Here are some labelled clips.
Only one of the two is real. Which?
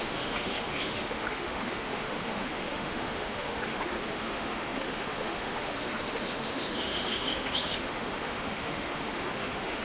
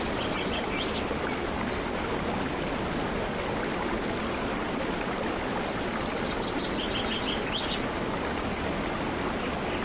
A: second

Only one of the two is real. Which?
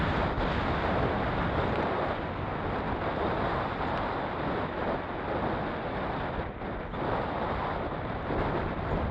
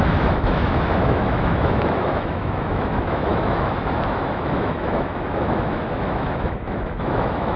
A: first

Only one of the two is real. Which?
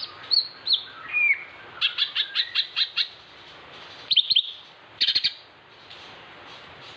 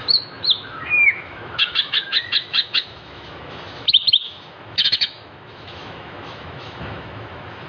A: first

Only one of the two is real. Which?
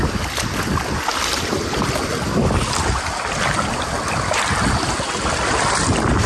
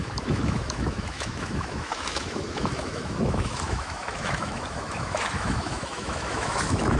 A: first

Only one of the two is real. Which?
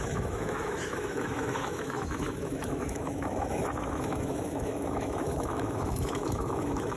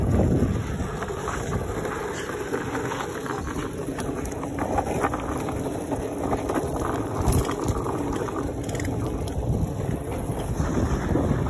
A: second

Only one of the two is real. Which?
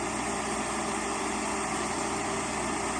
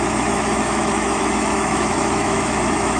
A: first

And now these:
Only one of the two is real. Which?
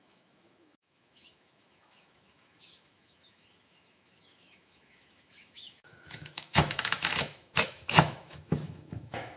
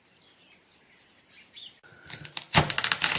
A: second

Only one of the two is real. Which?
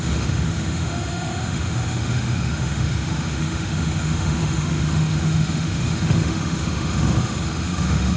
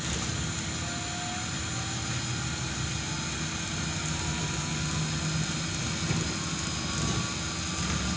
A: second